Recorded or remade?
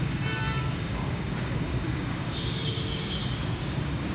remade